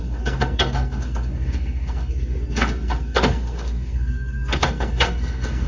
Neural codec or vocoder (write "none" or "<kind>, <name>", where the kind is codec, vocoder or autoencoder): codec, SNAC